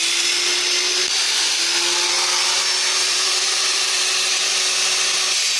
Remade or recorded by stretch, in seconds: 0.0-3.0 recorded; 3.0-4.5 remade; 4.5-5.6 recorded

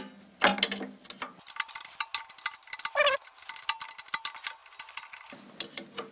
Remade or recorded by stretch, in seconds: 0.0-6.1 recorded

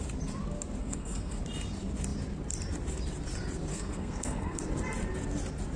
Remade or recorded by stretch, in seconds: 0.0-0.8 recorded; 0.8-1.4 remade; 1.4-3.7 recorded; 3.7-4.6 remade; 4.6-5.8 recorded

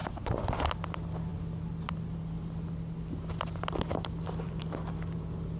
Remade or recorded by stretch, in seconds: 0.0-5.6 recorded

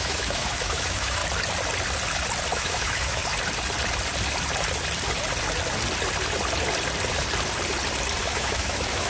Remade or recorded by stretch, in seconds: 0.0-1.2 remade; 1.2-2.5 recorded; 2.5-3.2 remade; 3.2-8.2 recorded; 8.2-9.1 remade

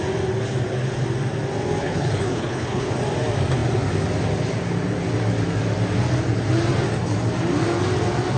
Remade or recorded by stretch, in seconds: 0.0-1.8 recorded; 1.8-2.9 remade; 2.9-8.4 recorded

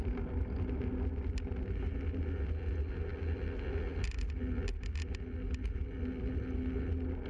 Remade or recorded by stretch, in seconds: 0.0-7.3 recorded